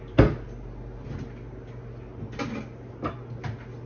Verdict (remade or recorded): recorded